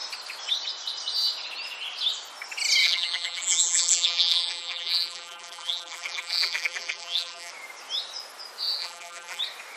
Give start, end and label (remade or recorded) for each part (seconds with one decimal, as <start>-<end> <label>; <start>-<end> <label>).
0.0-2.8 recorded; 2.8-7.5 remade; 7.5-8.8 recorded; 8.8-9.4 remade; 9.4-9.8 recorded

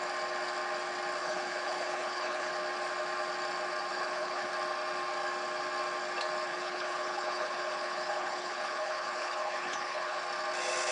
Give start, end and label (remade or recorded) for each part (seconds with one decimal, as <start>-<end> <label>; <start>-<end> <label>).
0.0-1.2 recorded; 1.2-2.5 remade; 2.5-3.9 recorded; 3.9-4.5 remade; 4.5-6.5 recorded; 6.5-10.2 remade; 10.2-10.9 recorded

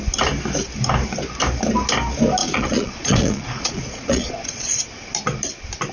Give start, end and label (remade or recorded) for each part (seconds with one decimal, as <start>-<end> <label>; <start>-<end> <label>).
0.0-2.4 recorded; 2.4-4.8 remade; 4.8-5.9 recorded

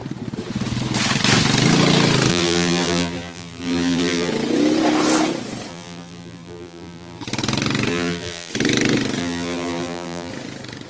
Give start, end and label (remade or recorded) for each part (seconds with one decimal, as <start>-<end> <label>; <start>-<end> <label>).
0.0-2.3 recorded; 2.3-4.3 remade; 4.3-5.7 recorded; 5.7-7.2 remade; 7.2-7.9 recorded; 7.9-8.5 remade; 8.5-9.2 recorded; 9.2-10.3 remade; 10.3-10.9 recorded

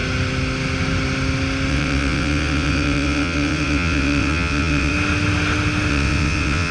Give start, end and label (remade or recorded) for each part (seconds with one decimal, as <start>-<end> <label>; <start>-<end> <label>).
0.0-1.7 recorded; 1.7-4.9 remade; 4.9-5.9 recorded; 5.9-6.7 remade

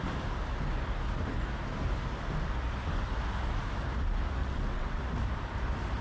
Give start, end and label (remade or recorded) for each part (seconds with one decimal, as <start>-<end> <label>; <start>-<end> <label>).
0.0-4.4 recorded; 4.4-5.0 remade; 5.0-6.0 recorded

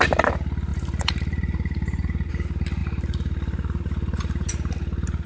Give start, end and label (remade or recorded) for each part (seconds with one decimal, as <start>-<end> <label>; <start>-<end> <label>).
0.0-0.7 recorded; 0.7-2.3 remade; 2.3-2.8 recorded; 2.8-4.5 remade; 4.5-5.3 recorded

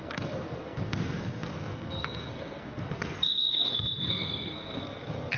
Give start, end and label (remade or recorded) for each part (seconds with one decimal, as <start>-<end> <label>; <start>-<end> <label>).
0.0-5.4 remade